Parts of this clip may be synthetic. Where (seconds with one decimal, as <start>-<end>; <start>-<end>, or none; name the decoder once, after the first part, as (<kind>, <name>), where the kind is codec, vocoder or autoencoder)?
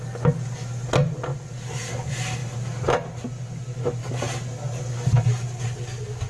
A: none